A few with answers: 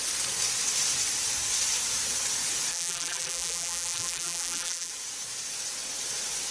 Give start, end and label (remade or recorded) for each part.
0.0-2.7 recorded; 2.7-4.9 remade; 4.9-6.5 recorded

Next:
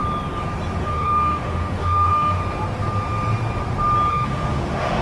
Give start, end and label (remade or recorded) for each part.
0.0-0.8 recorded; 0.8-2.4 remade; 2.4-4.1 recorded; 4.1-5.0 remade

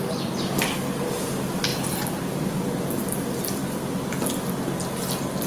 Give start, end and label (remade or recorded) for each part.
0.0-5.5 recorded

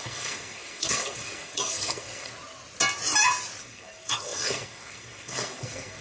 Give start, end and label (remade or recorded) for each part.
0.0-2.3 remade; 2.3-3.6 recorded; 3.6-6.0 remade